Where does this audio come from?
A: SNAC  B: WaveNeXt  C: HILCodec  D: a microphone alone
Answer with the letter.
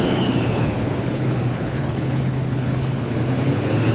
C